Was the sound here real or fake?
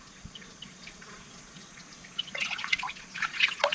fake